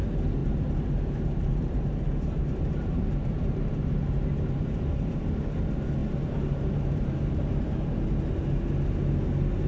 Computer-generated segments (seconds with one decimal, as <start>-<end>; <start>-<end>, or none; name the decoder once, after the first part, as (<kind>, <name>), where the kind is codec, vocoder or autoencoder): 0.4-5.2 (vocoder, BigVGAN v2); 6.0-7.6